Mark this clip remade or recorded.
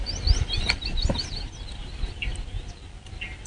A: recorded